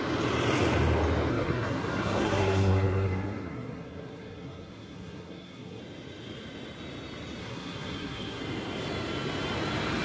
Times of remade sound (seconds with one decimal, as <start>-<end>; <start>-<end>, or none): 1.3-5.8; 7.4-8.4